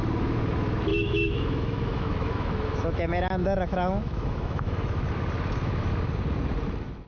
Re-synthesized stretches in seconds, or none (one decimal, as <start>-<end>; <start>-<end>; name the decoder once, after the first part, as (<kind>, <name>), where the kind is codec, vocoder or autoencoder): 0.9-5.0 (autoencoder, DAC-VAE)